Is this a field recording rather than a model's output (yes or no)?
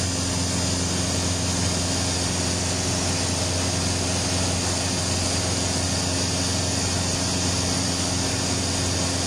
yes